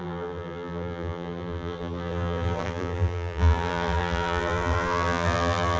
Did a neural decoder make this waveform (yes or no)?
yes